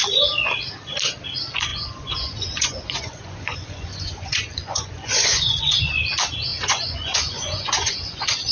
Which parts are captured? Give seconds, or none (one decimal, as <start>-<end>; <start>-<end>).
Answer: 0.0-1.7; 5.8-6.5